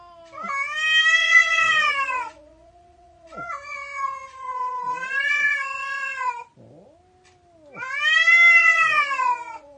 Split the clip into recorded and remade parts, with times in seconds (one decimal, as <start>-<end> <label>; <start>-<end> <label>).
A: 0.0-1.2 recorded; 1.2-6.3 remade; 6.3-8.6 recorded; 8.6-9.8 remade